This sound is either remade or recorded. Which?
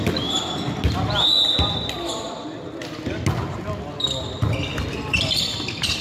recorded